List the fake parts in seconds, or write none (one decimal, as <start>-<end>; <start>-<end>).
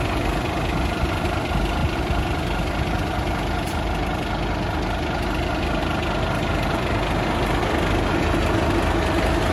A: none